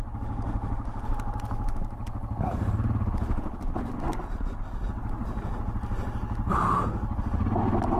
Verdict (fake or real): real